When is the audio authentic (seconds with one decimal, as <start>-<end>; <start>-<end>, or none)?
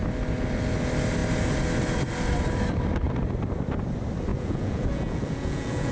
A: 0.0-4.3